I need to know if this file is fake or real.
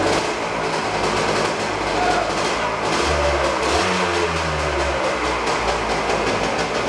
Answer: real